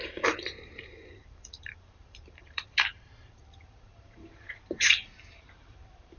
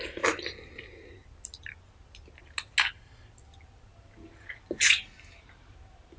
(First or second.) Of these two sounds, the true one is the second